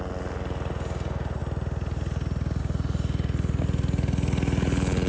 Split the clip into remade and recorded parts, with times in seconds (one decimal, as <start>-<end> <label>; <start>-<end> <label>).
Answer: 0.0-5.1 recorded